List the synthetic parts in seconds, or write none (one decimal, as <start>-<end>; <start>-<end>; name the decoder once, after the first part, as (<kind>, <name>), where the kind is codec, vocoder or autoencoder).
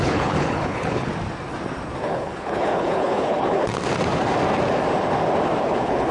0.0-1.1 (codec, HILCodec); 2.0-3.7; 5.6-6.1